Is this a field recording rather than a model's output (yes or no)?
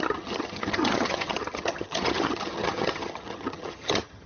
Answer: no